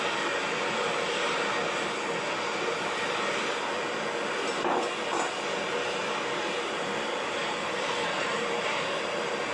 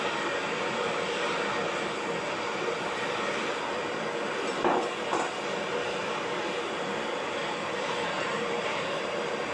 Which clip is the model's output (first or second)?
second